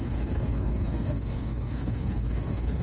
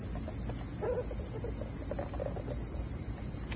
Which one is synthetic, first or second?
first